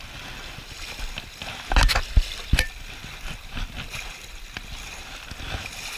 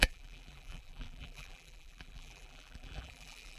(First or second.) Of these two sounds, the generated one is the second